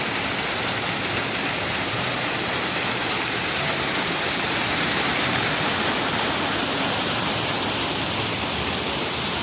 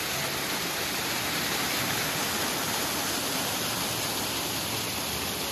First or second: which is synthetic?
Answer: first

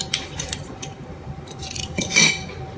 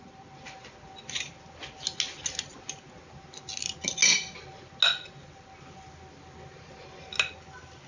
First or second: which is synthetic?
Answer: first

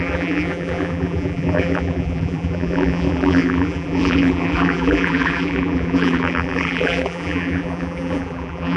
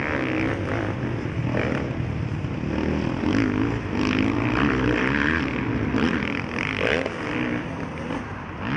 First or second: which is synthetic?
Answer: first